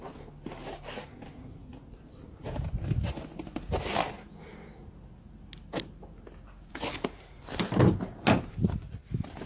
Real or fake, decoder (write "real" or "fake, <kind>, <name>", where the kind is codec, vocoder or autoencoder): real